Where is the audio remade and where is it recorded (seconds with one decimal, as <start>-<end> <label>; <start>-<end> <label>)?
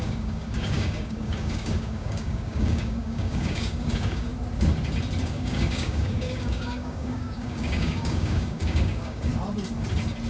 0.0-4.3 remade; 4.3-5.2 recorded; 5.2-9.3 remade; 9.3-10.3 recorded